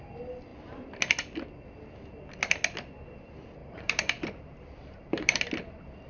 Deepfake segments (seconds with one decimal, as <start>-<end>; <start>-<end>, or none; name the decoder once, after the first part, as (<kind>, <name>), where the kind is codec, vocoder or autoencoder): 0.5-1.0 (vocoder, BigVGAN v2); 3.6-5.4

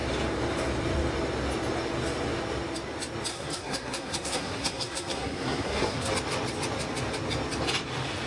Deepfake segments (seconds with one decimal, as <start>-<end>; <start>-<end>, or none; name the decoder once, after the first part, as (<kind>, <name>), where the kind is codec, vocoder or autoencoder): 3.3-6.1 (codec, SNAC)

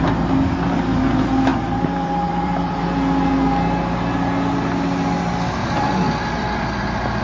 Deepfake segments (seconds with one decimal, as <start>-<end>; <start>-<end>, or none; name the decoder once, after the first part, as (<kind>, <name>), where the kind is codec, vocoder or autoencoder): 1.5-2.8 (vocoder, BigVGAN v2); 5.6-7.2

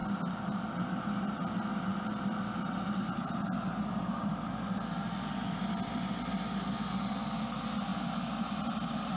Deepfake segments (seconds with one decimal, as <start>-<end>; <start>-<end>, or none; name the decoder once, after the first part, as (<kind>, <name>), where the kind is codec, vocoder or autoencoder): none

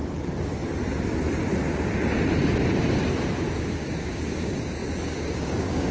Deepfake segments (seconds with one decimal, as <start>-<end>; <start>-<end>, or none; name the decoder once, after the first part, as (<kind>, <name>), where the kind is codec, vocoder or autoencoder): 3.5-5.9 (codec, DAC)

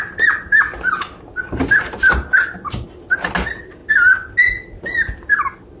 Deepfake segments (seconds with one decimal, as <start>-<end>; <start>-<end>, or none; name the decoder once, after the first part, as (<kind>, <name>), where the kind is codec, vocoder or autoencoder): none

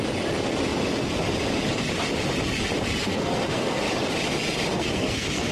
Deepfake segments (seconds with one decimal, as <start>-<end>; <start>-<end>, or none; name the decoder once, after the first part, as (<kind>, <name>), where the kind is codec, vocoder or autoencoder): 3.0-3.8 (codec, SNAC); 4.7-5.5

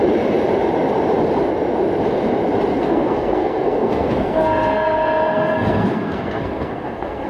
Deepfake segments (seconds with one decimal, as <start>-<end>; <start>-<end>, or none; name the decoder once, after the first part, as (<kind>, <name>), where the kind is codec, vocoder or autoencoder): 2.7-7.3 (codec, SNAC)